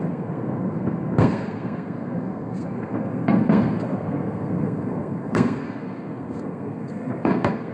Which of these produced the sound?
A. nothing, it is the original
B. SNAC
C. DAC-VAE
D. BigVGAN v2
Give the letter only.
B